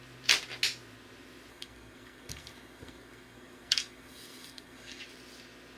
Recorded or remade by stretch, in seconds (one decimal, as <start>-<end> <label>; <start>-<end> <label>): 0.0-1.5 recorded; 1.5-5.0 remade; 5.0-5.8 recorded